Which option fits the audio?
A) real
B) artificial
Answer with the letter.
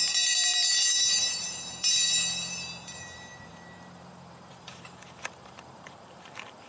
B